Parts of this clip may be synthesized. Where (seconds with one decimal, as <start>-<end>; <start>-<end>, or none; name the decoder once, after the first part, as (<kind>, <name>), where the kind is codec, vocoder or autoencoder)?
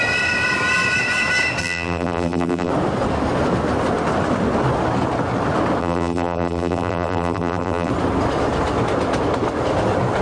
1.6-2.7 (vocoder, BigVGAN v2); 5.8-7.9